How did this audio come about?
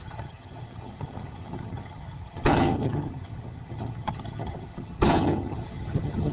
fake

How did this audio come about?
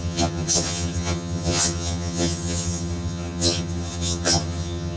fake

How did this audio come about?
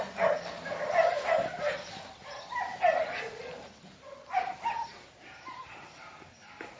real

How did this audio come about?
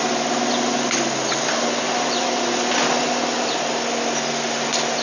real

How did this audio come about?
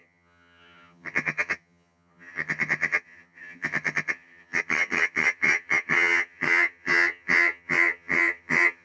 fake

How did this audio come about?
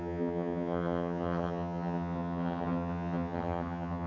fake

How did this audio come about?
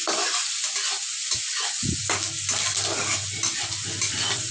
real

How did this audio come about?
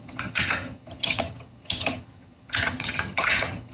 fake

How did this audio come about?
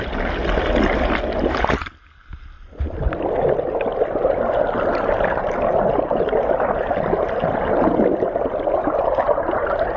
real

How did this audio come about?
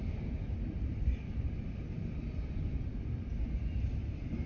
real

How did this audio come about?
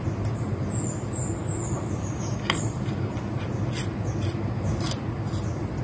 real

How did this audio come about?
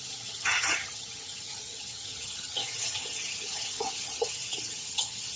fake